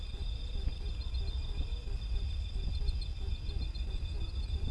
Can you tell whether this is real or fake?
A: real